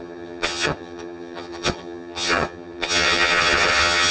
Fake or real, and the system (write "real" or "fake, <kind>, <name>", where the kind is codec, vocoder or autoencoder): fake, vocoder, HiFi-GAN